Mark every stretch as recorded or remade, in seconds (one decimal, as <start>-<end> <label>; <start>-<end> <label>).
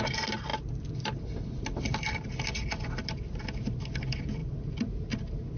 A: 0.0-5.6 recorded